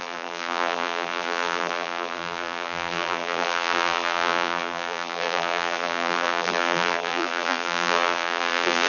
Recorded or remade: remade